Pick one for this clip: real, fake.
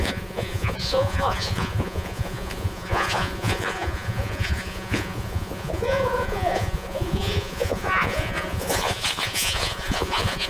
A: fake